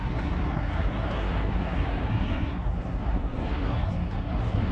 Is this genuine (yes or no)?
no